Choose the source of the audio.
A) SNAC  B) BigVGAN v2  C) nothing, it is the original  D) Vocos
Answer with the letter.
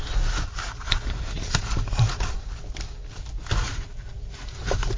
C